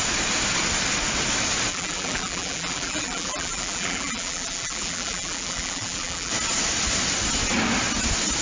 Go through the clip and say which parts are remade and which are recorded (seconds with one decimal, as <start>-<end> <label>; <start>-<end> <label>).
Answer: 0.0-1.7 recorded; 1.7-6.3 remade; 6.3-8.4 recorded